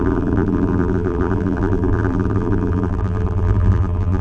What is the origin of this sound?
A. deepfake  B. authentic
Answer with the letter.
A